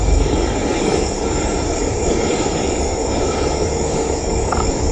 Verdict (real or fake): fake